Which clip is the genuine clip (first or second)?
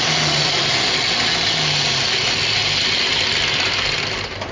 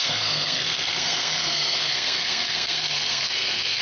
first